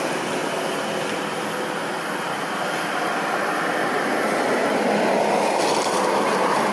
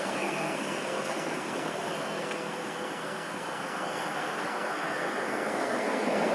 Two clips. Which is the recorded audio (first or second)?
first